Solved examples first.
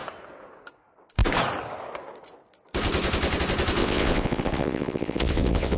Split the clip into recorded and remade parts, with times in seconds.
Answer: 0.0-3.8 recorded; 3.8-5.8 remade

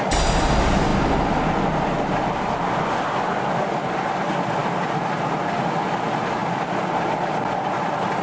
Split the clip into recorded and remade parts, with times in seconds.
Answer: 0.0-8.2 recorded

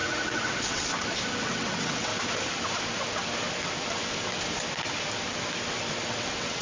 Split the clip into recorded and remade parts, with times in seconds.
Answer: 0.0-0.9 remade; 0.9-1.4 recorded; 1.4-2.1 remade; 2.1-6.1 recorded; 6.1-6.6 remade

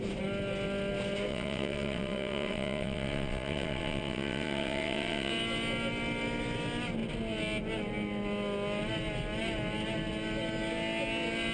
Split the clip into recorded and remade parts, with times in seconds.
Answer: 0.0-1.3 recorded; 1.3-5.3 remade; 5.3-11.5 recorded